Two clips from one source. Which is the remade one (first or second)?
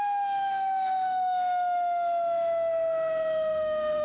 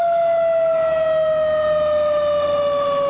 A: first